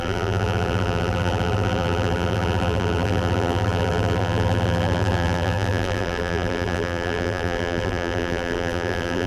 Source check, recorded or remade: remade